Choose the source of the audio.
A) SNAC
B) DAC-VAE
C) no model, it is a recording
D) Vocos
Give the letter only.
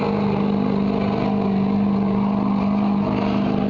C